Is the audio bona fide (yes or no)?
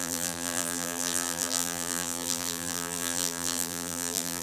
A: no